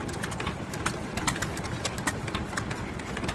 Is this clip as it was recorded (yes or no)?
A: yes